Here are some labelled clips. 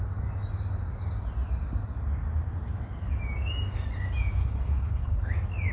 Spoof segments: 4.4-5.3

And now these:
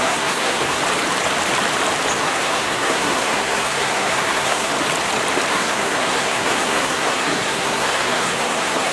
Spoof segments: 0.0-0.8; 2.2-4.7; 5.5-8.9

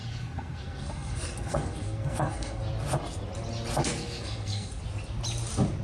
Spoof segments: 0.0-2.6; 3.8-4.8

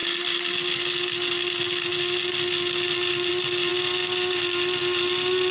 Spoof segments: none

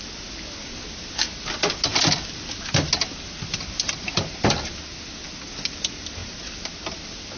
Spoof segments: none

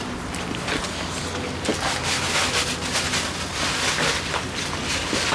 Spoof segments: none

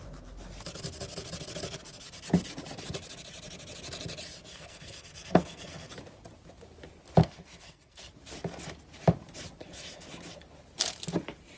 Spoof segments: 4.5-5.9; 7.2-8.1